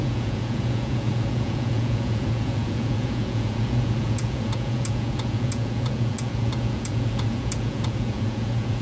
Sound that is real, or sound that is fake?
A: fake